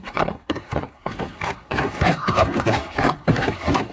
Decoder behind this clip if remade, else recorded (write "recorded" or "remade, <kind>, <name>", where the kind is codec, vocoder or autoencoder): remade, codec, SNAC